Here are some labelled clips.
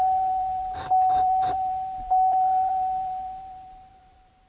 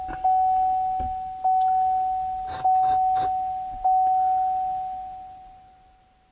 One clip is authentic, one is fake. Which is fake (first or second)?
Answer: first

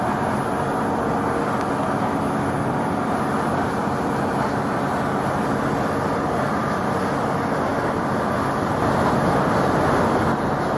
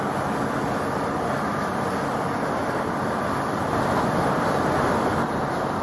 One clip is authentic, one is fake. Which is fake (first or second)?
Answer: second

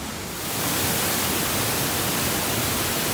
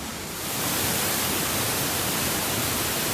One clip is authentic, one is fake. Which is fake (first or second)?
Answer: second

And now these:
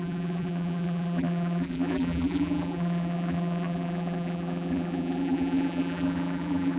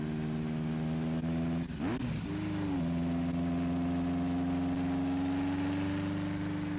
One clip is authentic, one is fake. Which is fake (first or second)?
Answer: first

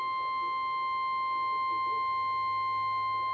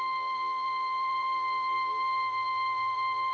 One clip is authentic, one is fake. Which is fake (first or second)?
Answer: second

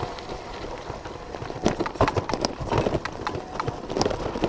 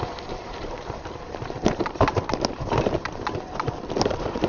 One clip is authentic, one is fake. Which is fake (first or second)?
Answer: second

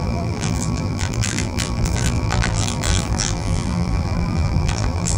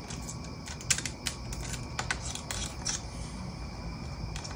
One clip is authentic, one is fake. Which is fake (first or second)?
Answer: first